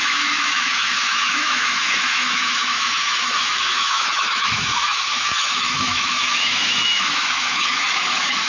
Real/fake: fake